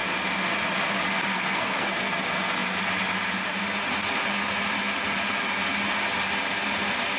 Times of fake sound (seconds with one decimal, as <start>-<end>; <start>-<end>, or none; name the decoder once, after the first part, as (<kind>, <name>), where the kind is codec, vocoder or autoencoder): 1.3-2.1 (codec, SNAC)